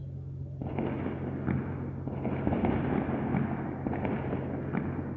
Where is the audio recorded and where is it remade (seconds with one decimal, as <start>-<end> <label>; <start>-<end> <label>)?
0.0-5.2 recorded